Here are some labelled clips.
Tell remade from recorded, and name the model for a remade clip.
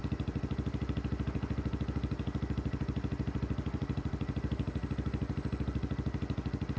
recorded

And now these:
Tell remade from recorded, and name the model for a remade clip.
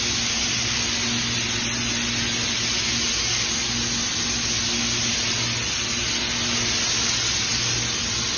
recorded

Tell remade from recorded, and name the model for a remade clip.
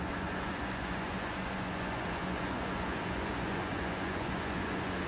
remade, vocoder, Vocos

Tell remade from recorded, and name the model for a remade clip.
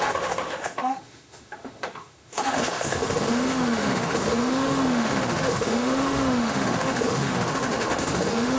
remade, autoencoder, DAC-VAE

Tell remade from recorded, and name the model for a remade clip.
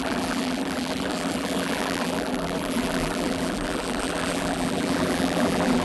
remade, vocoder, BigVGAN v2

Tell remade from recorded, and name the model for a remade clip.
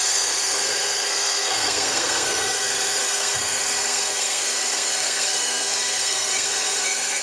remade, codec, SNAC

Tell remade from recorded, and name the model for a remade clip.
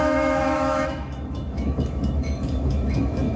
remade, autoencoder, DAC-VAE